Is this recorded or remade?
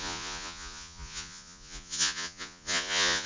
remade